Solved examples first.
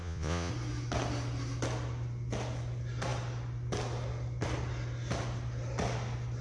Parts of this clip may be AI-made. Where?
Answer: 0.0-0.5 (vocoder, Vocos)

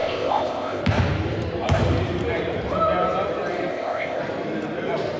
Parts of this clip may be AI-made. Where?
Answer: 0.0-0.8 (codec, ZipCodec); 3.7-4.2

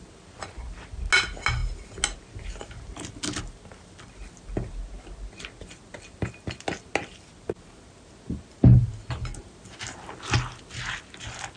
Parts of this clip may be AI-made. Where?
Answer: none

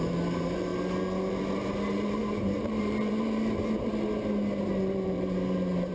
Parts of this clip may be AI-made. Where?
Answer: 0.0-0.7 (vocoder, BigVGAN v2); 1.3-3.9; 4.6-5.9

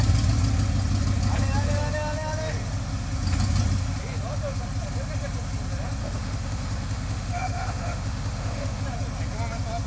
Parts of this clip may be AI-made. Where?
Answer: 6.0-8.8 (autoencoder, DAC-VAE)

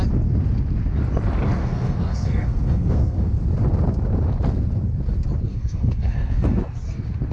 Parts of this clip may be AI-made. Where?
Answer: 1.6-3.4 (codec, SNAC); 5.5-6.6

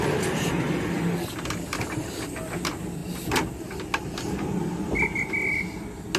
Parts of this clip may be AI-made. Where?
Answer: none